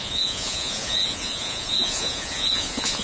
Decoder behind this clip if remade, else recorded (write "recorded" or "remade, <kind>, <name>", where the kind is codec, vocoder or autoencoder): remade, vocoder, Vocos